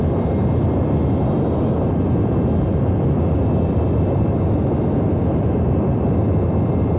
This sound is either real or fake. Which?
real